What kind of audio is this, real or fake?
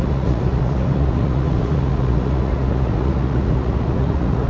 fake